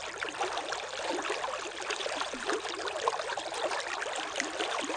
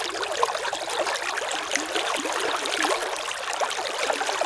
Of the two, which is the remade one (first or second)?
first